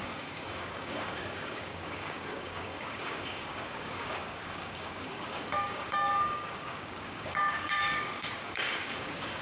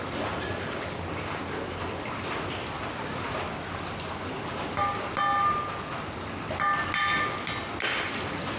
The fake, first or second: first